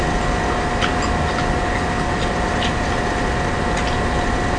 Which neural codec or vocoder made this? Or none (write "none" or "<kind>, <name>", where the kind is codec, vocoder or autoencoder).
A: none